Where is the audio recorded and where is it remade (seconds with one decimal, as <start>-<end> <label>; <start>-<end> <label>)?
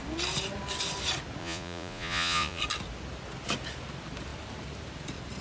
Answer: 0.0-1.4 recorded; 1.4-2.6 remade; 2.6-5.4 recorded